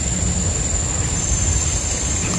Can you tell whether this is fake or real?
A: real